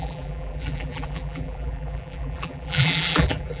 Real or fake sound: fake